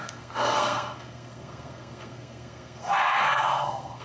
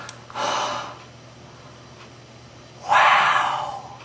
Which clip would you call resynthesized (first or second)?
first